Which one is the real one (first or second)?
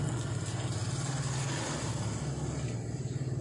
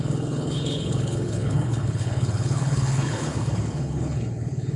first